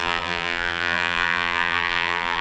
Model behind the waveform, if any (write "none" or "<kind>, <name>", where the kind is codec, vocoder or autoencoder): vocoder, BigVGAN v2